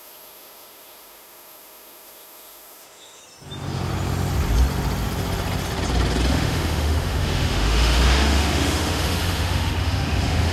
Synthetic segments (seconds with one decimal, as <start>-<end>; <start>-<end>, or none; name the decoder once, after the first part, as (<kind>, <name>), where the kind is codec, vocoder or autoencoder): 0.0-3.2 (autoencoder, DAC-VAE); 6.3-10.5